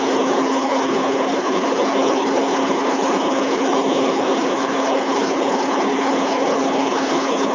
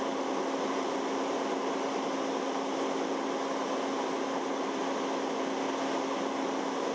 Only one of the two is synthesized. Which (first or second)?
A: first